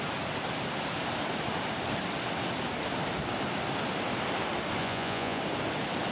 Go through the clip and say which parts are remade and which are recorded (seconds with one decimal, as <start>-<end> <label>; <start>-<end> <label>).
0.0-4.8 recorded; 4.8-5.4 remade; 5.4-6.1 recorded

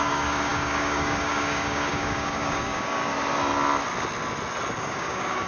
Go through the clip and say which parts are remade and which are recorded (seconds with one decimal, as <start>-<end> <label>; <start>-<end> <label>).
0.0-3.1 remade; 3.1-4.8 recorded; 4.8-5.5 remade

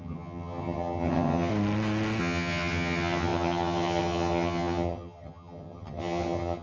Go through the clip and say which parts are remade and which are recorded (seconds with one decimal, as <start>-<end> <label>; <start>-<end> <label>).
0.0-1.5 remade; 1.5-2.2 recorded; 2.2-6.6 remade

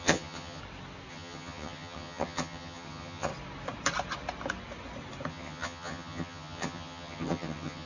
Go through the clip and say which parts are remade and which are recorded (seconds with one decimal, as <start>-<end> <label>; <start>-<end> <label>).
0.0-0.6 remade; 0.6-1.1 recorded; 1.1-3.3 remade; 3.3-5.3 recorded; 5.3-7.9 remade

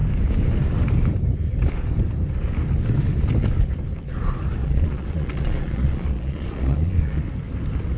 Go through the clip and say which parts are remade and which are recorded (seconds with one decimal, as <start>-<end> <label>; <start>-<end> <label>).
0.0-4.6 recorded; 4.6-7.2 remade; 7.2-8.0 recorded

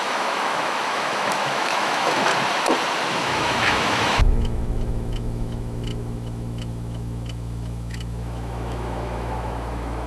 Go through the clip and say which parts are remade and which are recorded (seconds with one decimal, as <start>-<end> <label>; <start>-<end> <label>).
0.0-2.3 remade; 2.3-3.1 recorded; 3.1-10.1 remade